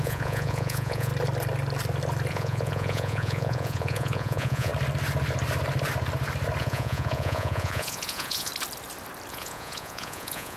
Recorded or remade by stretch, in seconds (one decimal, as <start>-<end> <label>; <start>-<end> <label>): 0.0-1.1 remade; 1.1-2.3 recorded; 2.3-4.7 remade; 4.7-6.6 recorded; 6.6-8.5 remade; 8.5-9.3 recorded; 9.3-10.6 remade